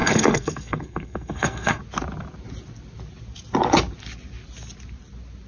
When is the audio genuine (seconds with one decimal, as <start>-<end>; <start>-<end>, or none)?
1.8-5.5